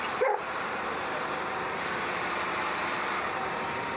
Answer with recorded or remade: remade